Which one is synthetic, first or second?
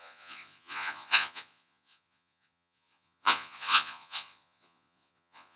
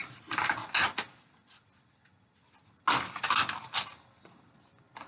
first